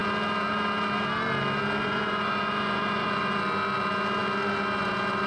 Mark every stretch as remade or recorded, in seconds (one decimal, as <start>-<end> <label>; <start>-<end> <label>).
0.0-1.8 recorded; 1.8-3.4 remade; 3.4-5.3 recorded